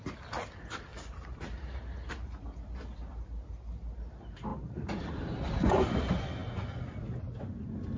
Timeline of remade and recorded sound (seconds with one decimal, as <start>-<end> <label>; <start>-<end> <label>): 0.0-0.9 recorded; 0.9-2.1 remade; 2.1-4.5 recorded; 4.5-5.1 remade; 5.1-8.0 recorded